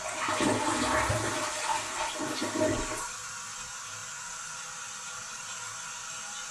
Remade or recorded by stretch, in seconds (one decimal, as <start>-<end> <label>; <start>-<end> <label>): 0.0-6.5 recorded